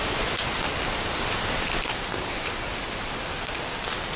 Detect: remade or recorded remade